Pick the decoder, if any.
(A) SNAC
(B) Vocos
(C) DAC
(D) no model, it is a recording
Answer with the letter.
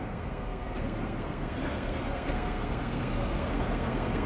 A